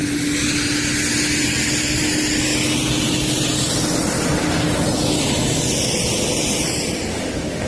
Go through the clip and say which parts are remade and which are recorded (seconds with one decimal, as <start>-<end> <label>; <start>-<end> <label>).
0.0-7.1 recorded; 7.1-7.7 remade